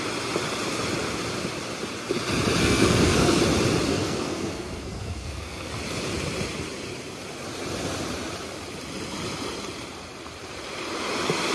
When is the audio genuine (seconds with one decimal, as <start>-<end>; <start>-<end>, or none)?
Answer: 0.0-2.6; 3.4-3.9; 5.7-11.5